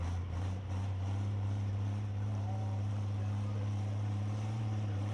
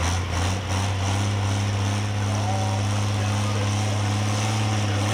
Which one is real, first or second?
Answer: second